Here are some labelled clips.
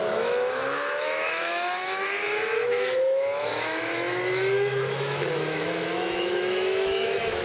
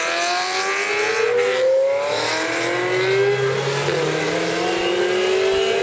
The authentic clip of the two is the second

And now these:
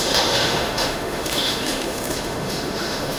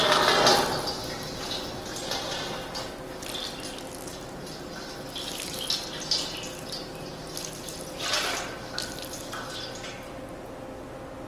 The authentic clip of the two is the second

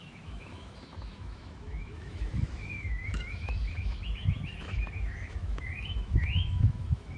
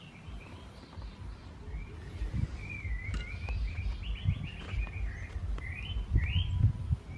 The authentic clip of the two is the second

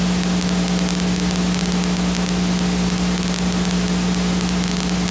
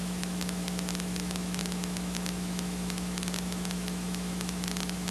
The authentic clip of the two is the first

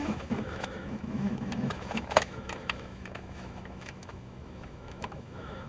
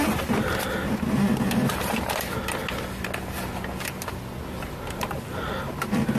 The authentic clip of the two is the second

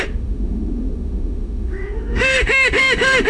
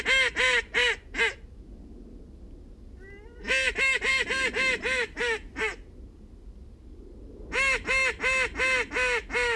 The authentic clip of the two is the second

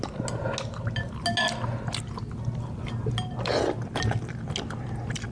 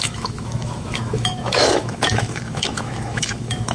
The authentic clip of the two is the first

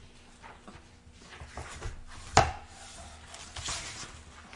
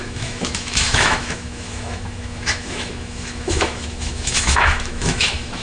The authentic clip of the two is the first